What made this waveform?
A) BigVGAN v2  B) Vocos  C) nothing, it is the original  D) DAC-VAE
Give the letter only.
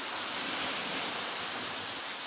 C